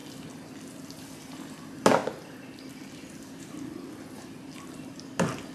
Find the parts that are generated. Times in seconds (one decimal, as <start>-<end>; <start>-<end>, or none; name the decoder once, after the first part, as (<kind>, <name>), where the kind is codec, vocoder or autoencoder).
none

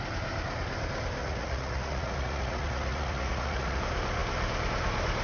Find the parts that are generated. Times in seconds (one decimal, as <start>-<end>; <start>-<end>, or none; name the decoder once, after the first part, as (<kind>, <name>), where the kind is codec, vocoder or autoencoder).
1.2-3.8 (vocoder, Vocos)

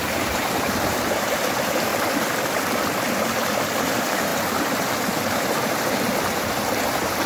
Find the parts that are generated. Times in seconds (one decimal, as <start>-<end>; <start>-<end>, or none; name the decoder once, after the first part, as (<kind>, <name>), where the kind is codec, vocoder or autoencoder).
0.0-1.9 (vocoder, BigVGAN v2); 3.8-7.3

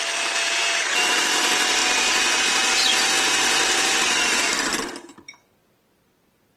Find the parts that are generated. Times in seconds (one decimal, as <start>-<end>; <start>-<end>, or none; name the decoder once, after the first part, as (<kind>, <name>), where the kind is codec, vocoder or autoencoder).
2.8-4.1 (vocoder, BigVGAN v2)